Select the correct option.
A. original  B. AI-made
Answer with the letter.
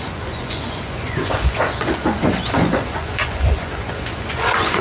B